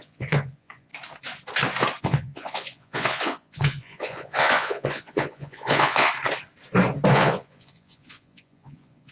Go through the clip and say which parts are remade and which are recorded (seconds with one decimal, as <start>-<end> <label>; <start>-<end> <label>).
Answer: 0.0-0.9 remade; 0.9-2.0 recorded; 2.0-6.1 remade; 6.1-7.1 recorded; 7.1-9.1 remade